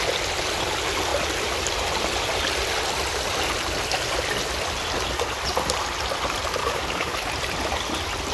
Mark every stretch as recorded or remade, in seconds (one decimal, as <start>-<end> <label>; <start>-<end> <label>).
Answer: 0.0-6.6 recorded; 6.6-7.3 remade; 7.3-8.3 recorded